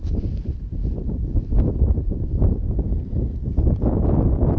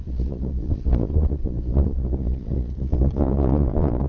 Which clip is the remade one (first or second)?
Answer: second